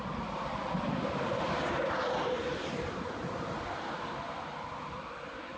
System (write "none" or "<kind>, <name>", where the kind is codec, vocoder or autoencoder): vocoder, BigVGAN v2